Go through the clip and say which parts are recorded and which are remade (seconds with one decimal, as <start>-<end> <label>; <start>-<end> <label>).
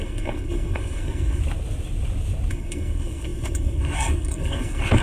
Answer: 0.0-1.4 remade; 1.4-2.5 recorded; 2.5-5.0 remade